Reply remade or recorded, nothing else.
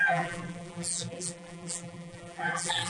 remade